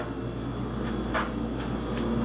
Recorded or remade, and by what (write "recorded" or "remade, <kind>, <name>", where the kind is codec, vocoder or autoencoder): recorded